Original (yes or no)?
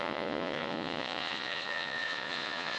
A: no